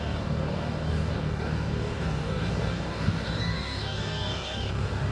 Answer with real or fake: fake